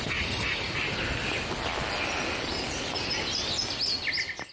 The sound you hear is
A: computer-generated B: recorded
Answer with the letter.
B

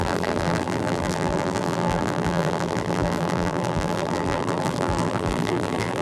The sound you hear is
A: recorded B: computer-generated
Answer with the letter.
B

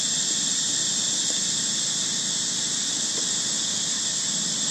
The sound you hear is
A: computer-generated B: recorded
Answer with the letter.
B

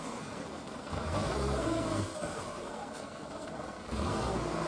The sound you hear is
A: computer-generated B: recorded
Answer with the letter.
A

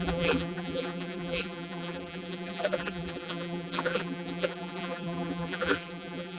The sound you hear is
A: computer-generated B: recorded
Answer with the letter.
A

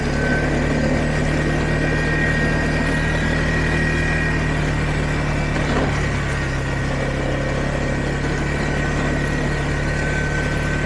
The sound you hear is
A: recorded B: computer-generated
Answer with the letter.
A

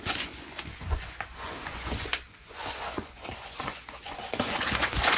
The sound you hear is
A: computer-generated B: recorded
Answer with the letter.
A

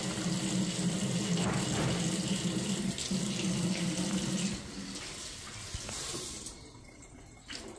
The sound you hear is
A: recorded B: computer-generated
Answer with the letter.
A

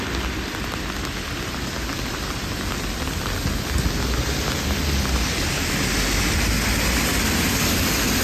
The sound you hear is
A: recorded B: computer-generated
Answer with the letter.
A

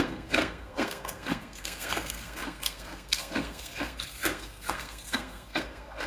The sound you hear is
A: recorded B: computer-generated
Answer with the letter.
B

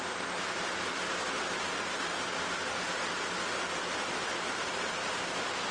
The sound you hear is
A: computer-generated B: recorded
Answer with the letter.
B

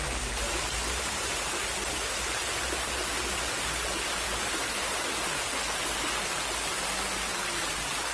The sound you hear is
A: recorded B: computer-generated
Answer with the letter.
A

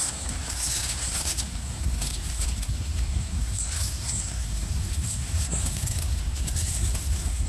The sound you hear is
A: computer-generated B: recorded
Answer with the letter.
A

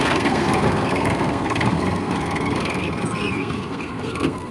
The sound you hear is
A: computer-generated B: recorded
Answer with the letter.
A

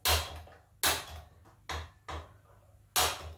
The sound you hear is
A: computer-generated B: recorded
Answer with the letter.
B